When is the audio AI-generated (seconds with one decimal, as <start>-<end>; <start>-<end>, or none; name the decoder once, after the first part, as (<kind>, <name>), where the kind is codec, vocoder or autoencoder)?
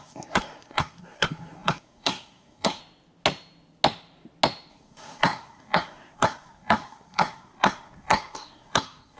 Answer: 0.0-2.8 (codec, SNAC); 4.7-9.2